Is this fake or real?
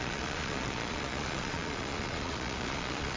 fake